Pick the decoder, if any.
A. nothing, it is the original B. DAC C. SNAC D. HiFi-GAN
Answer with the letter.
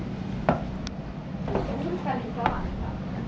A